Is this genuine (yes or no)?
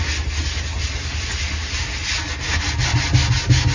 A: yes